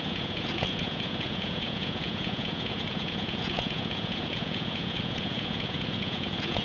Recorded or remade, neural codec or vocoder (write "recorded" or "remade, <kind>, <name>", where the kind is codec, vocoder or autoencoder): remade, vocoder, Vocos